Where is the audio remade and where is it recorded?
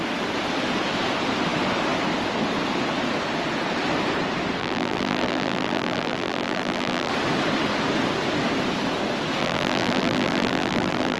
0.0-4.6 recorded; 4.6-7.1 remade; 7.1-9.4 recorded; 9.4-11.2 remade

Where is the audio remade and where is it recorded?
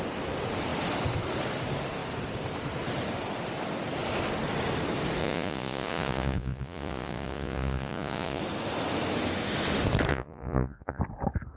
0.0-5.2 recorded; 5.2-8.4 remade; 8.4-10.1 recorded; 10.1-11.0 remade; 11.0-11.6 recorded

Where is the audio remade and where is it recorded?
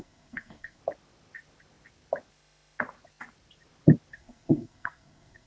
0.0-0.8 remade; 0.8-4.1 recorded; 4.1-5.5 remade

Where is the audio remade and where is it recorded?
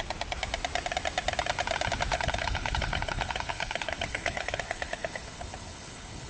0.0-2.1 recorded; 2.1-6.3 remade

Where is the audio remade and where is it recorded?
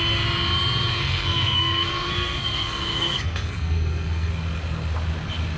0.0-0.9 recorded; 0.9-4.3 remade; 4.3-5.6 recorded